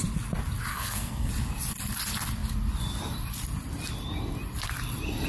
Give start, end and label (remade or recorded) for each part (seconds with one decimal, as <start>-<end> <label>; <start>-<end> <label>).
0.0-0.7 recorded; 0.7-1.3 remade; 1.3-5.3 recorded